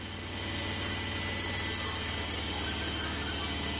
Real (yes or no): yes